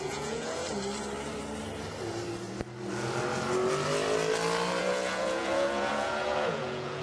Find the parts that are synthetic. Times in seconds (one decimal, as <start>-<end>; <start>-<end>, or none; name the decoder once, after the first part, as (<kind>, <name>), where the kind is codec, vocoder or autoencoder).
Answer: 0.0-0.6 (vocoder, Vocos); 4.8-7.0

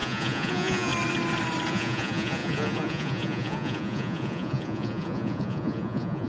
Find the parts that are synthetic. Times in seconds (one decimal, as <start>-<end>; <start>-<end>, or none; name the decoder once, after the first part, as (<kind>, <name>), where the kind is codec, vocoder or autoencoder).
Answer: 0.0-0.9 (vocoder, Vocos); 1.7-6.3

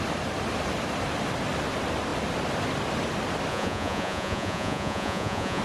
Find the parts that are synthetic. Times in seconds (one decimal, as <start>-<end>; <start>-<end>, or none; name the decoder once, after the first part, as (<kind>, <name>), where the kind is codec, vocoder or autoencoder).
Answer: 3.5-5.6 (vocoder, Vocos)

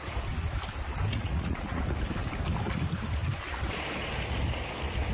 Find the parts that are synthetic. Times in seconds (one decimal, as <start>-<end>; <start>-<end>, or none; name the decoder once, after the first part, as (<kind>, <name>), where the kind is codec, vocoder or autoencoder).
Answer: 1.1-2.0 (vocoder, Vocos)